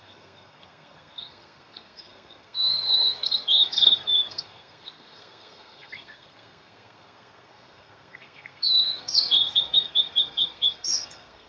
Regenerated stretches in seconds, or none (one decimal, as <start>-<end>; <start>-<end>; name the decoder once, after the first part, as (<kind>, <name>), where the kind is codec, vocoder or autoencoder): 0.0-11.5 (codec, SNAC)